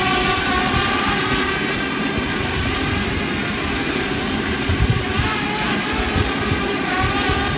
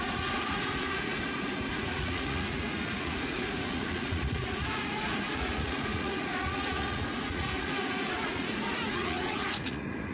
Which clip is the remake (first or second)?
second